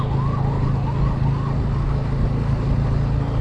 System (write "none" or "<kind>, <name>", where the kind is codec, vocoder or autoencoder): none